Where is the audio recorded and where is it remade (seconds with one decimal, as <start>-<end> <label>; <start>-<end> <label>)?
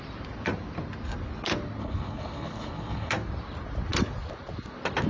0.0-1.8 recorded; 1.8-3.1 remade; 3.1-5.1 recorded